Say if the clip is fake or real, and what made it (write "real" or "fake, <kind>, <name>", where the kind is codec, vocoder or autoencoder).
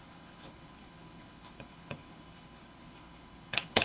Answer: fake, codec, HILCodec